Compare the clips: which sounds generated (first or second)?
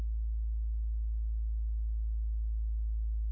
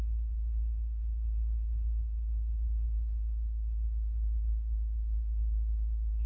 second